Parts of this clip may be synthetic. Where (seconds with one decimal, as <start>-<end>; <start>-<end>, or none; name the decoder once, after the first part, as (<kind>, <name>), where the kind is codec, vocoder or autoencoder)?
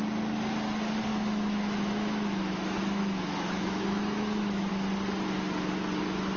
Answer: 1.1-4.7 (autoencoder, DAC-VAE)